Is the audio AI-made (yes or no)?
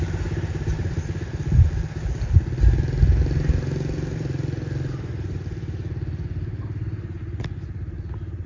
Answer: no